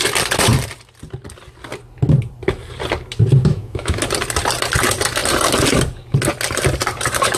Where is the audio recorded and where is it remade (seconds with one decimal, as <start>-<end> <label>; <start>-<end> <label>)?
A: 0.0-3.4 recorded; 3.4-4.0 remade; 4.0-7.4 recorded